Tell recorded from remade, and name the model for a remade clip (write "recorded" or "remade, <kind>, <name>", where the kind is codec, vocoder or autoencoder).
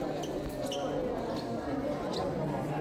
recorded